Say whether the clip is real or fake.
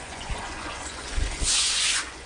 fake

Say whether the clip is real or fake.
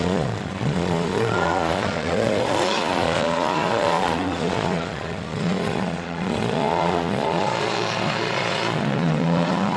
fake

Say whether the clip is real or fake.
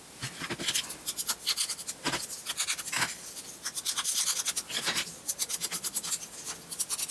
real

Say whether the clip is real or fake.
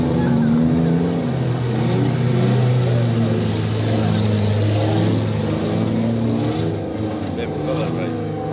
real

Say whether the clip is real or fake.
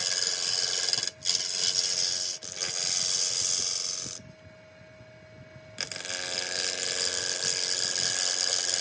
real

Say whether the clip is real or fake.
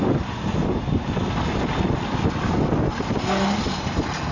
real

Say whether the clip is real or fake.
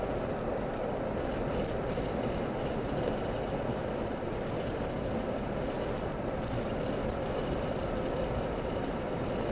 real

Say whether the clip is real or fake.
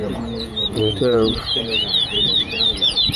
fake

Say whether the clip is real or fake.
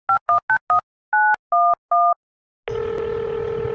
real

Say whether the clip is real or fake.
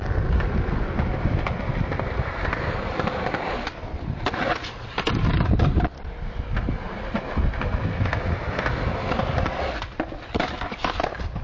real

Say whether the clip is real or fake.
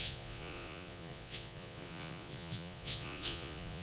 fake